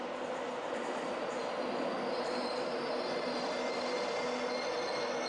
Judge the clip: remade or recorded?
recorded